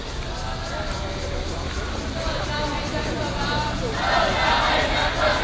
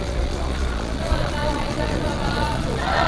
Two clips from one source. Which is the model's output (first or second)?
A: second